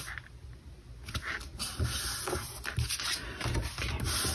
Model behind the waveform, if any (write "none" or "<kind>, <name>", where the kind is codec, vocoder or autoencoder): none